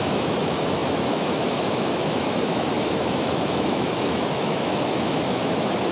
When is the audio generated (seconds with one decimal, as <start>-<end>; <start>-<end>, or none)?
0.0-5.9